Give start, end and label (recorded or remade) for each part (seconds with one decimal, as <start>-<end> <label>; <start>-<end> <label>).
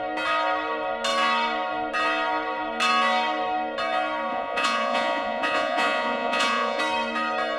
0.0-4.3 recorded; 4.3-6.8 remade; 6.8-7.6 recorded